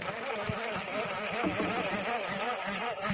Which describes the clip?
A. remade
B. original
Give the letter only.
B